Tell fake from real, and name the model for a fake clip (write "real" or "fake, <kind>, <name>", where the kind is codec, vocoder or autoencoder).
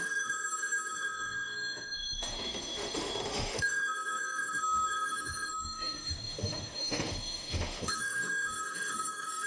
fake, autoencoder, DAC-VAE